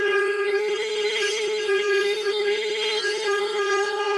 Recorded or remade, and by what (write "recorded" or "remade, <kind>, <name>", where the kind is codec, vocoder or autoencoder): remade, codec, SNAC